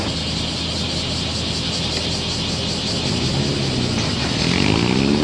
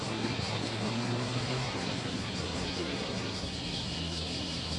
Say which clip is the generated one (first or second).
second